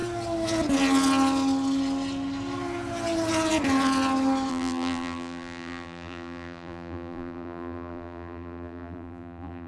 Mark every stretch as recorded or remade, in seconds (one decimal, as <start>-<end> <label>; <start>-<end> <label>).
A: 0.0-4.5 recorded; 4.5-9.7 remade